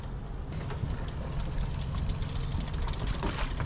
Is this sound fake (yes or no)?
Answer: no